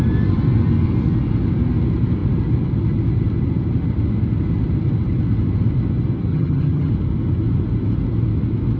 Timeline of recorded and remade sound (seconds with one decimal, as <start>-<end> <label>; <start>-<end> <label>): 0.0-6.3 recorded; 6.3-6.9 remade; 6.9-8.8 recorded